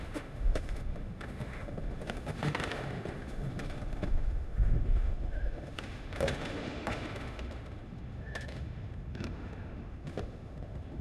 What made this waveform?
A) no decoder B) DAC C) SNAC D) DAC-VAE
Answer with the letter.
D